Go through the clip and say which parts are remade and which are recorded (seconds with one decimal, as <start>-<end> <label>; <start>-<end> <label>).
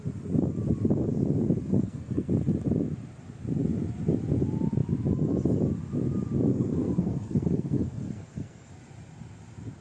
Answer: 0.0-1.7 recorded; 1.7-2.3 remade; 2.3-6.5 recorded; 6.5-8.7 remade; 8.7-9.8 recorded